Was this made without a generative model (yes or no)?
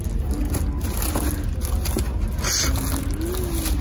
yes